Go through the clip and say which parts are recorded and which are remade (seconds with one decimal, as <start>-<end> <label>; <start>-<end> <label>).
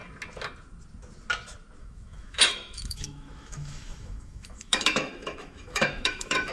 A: 0.0-1.8 recorded; 1.8-6.5 remade